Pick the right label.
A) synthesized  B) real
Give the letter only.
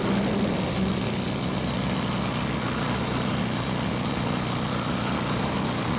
B